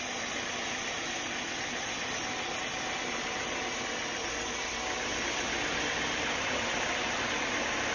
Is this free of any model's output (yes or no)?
yes